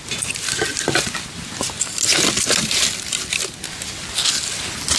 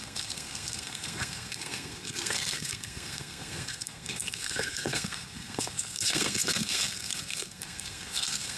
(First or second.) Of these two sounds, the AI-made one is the second